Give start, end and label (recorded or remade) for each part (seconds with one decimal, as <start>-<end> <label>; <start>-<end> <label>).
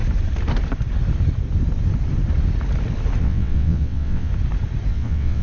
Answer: 0.0-3.2 recorded; 3.2-4.3 remade; 4.3-4.9 recorded; 4.9-5.4 remade